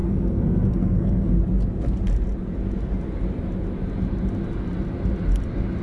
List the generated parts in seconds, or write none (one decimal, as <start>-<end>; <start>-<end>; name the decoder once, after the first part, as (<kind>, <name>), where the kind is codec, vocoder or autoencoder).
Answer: 0.0-1.4 (codec, SNAC)